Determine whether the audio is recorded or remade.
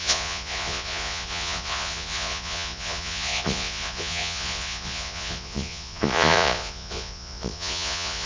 remade